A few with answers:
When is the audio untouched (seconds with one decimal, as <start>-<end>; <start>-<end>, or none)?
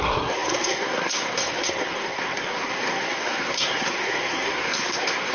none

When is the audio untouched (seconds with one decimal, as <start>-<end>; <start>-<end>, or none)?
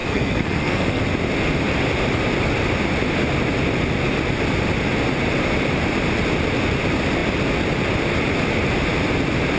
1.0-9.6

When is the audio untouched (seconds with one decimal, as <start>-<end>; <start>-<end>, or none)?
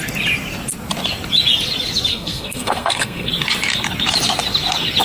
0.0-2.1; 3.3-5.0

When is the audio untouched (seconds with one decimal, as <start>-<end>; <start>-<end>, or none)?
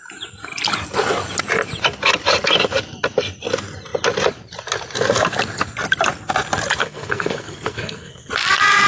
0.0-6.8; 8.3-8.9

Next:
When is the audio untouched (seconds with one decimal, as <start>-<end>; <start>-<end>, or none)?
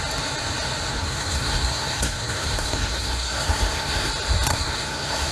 0.0-0.9; 4.1-4.5